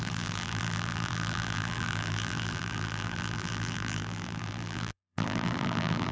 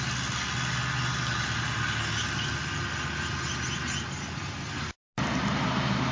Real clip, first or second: second